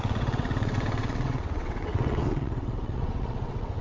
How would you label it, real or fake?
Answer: fake